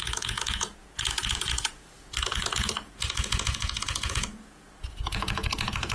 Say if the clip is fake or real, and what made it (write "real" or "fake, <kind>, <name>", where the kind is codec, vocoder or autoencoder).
fake, vocoder, Vocos